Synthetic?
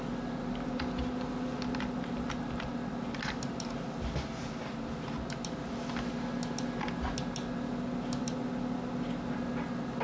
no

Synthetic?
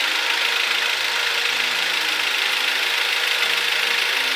no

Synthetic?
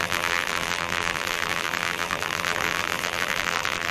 yes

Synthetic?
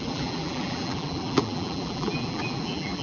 yes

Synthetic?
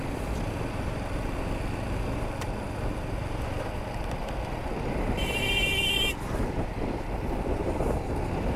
no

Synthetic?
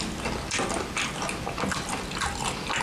no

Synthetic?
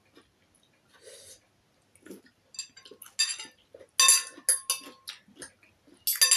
no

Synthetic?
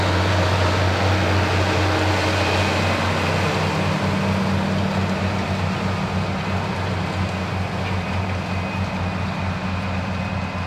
no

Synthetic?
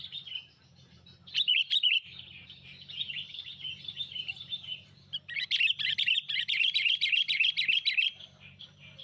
yes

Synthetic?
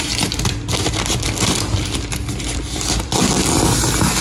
no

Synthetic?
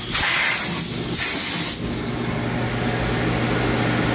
no